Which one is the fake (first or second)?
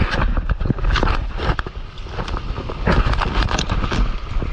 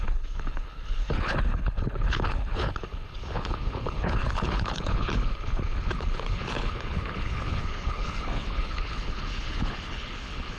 second